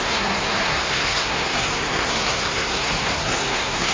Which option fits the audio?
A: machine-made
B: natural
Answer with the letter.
A